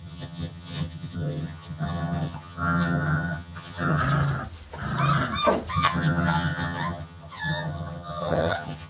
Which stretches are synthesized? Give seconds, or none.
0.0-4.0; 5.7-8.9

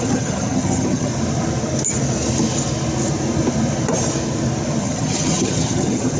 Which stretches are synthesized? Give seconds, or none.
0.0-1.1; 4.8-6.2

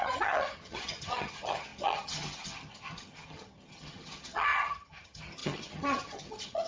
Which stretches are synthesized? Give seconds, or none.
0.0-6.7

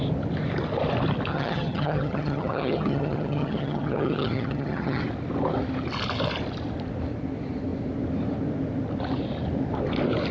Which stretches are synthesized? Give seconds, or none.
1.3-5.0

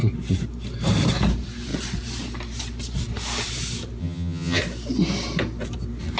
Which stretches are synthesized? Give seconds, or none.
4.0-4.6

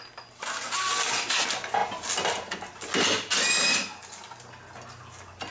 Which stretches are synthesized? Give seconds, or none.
none

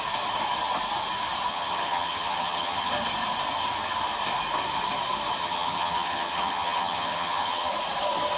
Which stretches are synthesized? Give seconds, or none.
1.5-2.9; 5.4-7.7